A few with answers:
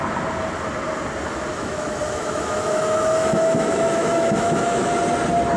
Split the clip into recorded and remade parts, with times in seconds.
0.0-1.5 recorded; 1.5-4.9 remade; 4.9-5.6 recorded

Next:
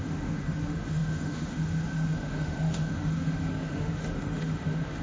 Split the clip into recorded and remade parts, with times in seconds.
0.0-5.0 remade

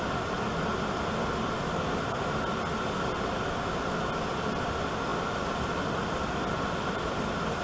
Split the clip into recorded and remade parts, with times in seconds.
0.0-0.7 recorded; 0.7-1.6 remade; 1.6-5.1 recorded; 5.1-7.1 remade; 7.1-7.6 recorded

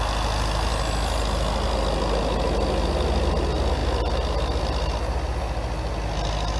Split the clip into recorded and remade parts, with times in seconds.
0.0-6.6 recorded

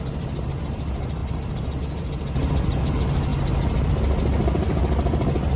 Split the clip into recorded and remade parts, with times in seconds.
0.0-5.6 recorded